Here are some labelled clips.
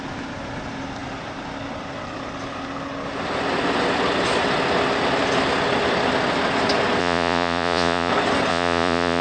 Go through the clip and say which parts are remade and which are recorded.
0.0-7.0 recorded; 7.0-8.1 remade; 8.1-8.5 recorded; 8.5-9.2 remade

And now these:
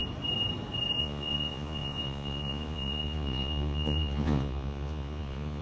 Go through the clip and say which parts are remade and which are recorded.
0.0-1.0 recorded; 1.0-5.6 remade